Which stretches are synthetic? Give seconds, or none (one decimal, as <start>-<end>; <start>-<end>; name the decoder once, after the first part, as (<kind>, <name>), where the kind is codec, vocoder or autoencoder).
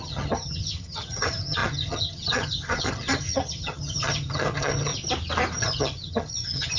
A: 0.0-4.9 (vocoder, HiFi-GAN); 5.6-6.8